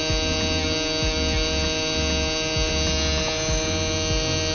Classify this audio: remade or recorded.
recorded